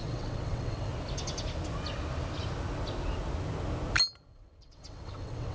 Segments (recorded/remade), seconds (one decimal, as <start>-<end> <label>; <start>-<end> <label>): 0.0-0.9 remade; 0.9-4.2 recorded; 4.2-5.5 remade